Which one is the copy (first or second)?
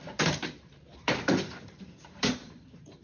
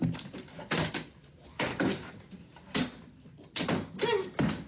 first